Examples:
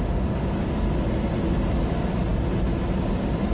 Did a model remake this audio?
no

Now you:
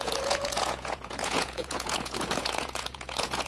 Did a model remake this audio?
yes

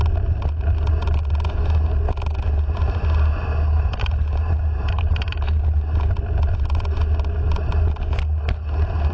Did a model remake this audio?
no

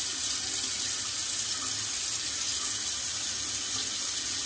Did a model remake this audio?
no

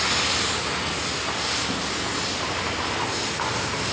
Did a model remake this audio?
no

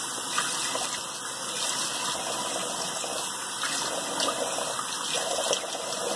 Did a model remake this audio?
no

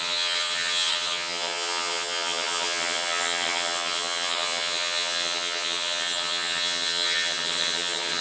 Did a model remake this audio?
yes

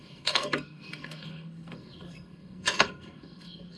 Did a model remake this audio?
yes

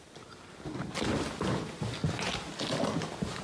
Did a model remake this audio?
no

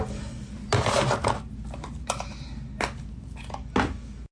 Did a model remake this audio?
no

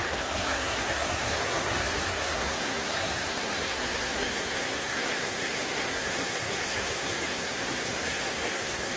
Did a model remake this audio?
yes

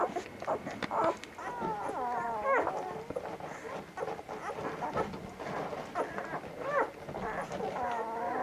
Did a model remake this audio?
no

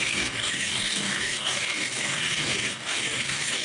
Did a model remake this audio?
yes